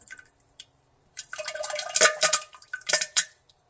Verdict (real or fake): fake